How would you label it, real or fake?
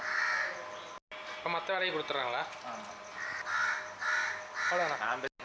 real